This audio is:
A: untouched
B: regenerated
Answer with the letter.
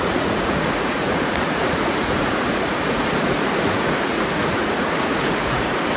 B